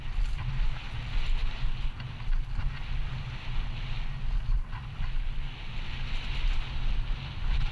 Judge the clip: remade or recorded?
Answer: recorded